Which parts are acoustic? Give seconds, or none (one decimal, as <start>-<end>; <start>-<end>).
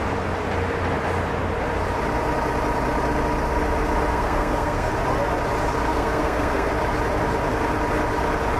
0.0-4.1; 4.9-5.9; 6.7-8.6